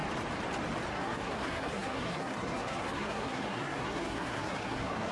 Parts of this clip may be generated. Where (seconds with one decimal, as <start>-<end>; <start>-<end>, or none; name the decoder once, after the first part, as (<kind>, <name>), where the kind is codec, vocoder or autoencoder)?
0.9-5.1 (codec, SNAC)

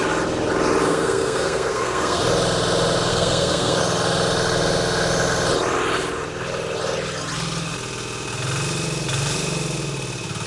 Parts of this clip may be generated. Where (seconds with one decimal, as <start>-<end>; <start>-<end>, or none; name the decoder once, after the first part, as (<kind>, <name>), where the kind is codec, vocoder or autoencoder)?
0.8-2.2 (codec, SNAC); 3.1-3.8

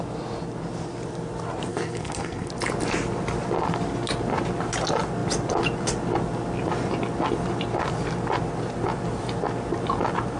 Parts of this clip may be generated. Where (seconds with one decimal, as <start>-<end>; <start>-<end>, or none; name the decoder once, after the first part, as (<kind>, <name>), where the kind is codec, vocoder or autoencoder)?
1.7-2.5 (codec, SNAC)

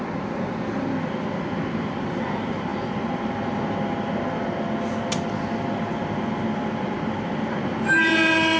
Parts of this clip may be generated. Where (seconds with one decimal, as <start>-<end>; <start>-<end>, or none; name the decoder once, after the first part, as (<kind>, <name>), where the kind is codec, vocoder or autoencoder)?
none